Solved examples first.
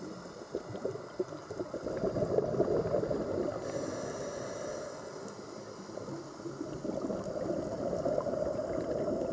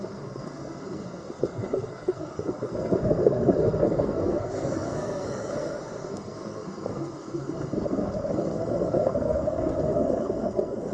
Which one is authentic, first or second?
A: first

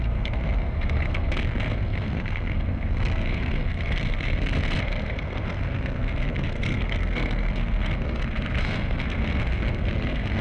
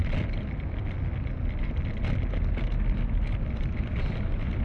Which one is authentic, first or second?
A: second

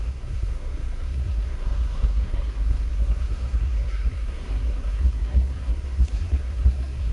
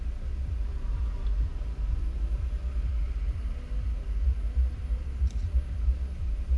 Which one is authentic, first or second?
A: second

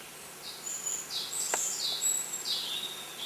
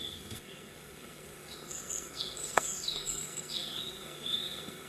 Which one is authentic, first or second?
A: first